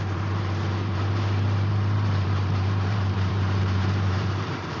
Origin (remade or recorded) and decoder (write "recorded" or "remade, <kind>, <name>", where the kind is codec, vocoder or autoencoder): remade, vocoder, BigVGAN v2